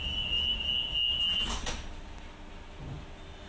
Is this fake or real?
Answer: real